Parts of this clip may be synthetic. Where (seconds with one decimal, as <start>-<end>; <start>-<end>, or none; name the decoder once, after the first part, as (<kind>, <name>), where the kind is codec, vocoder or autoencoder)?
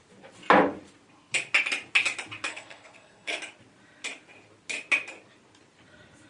2.5-3.4 (codec, SNAC)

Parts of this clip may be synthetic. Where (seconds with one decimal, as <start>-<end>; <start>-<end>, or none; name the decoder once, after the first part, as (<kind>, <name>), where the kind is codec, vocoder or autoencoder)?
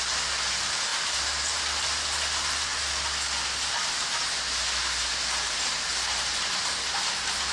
5.0-5.9 (vocoder, BigVGAN v2)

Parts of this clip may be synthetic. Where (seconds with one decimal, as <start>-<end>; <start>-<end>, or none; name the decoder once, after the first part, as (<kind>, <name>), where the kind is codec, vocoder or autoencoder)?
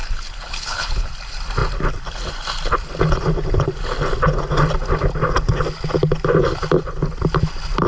0.0-1.1 (codec, HILCodec)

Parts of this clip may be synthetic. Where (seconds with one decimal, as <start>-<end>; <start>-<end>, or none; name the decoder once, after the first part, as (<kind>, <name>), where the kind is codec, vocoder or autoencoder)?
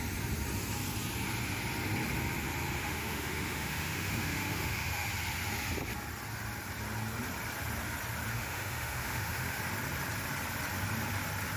2.8-5.1 (autoencoder, DAC-VAE); 8.3-9.6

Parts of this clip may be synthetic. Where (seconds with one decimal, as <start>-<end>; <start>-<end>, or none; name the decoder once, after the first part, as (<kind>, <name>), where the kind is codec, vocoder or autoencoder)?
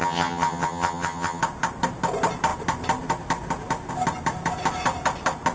0.0-1.4 (vocoder, HiFi-GAN)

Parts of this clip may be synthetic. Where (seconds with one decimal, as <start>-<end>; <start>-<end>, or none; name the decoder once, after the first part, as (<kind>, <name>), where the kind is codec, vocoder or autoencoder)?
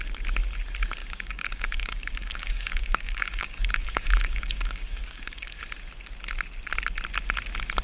1.0-5.6 (codec, DAC)